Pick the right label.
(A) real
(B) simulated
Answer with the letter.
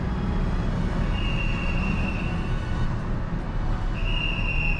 A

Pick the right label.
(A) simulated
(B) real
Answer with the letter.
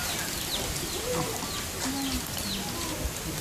B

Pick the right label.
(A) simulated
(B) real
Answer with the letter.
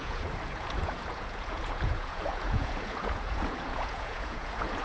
A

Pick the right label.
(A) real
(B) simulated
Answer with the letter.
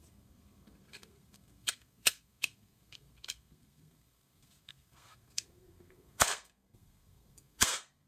B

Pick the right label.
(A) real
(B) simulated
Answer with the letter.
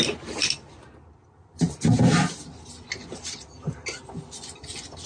A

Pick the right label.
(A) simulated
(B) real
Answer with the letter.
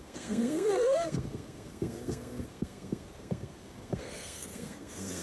A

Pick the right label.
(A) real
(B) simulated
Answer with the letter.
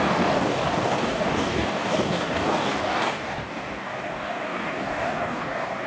B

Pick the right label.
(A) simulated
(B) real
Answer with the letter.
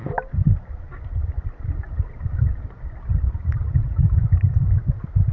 B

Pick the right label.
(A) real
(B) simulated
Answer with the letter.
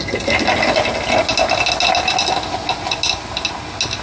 A